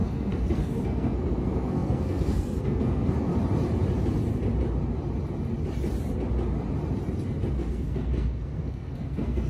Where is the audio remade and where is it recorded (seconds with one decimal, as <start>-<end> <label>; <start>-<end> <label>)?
0.0-3.3 remade; 3.3-7.5 recorded; 7.5-9.5 remade

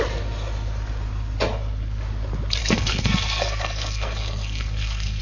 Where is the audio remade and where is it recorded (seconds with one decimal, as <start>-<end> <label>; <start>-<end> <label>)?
0.0-2.6 recorded; 2.6-5.2 remade